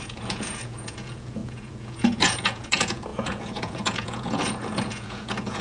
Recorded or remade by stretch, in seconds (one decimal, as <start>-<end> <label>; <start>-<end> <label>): 0.0-5.6 remade